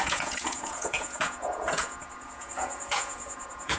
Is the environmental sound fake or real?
fake